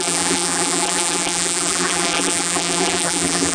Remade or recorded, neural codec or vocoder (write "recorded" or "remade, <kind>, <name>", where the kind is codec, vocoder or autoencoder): remade, vocoder, BigVGAN v2